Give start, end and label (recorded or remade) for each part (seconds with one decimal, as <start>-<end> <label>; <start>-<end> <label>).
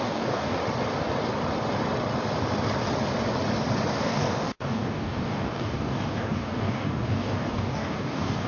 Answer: 0.0-0.6 remade; 0.6-3.9 recorded; 3.9-8.5 remade